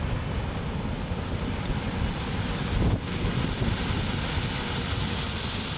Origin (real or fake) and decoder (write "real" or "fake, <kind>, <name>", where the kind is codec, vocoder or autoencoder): real